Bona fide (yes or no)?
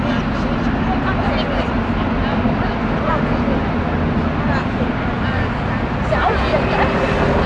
yes